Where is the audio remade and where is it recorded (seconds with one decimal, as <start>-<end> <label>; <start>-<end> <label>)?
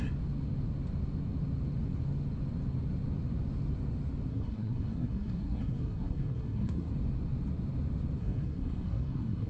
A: 0.0-4.3 recorded; 4.3-6.9 remade; 6.9-8.2 recorded; 8.2-9.5 remade